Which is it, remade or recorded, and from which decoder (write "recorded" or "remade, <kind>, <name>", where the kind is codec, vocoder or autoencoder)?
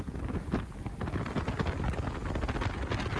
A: recorded